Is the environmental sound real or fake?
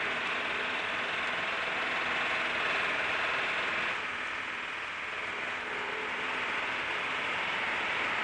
real